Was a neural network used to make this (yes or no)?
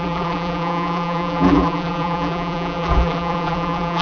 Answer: yes